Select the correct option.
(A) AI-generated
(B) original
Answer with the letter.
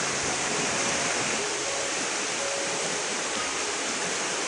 A